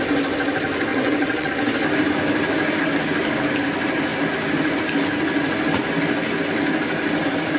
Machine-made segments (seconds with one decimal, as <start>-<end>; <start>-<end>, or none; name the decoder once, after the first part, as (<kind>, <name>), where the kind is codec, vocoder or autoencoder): 0.9-1.5 (vocoder, WaveNeXt)